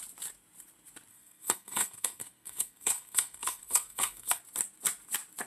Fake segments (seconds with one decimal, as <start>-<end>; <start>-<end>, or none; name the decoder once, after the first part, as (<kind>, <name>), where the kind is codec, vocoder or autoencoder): 1.1-4.4 (codec, SNAC)